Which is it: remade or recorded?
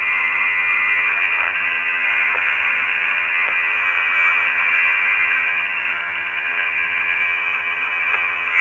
remade